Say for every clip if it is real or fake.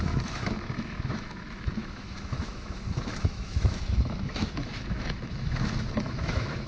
fake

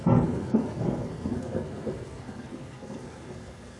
fake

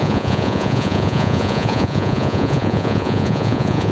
fake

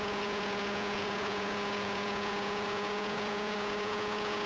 fake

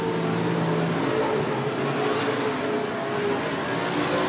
real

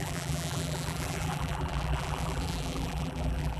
fake